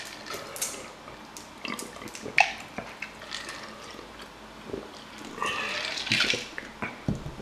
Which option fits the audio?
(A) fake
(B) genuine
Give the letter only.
B